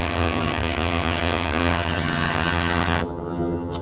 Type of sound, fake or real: fake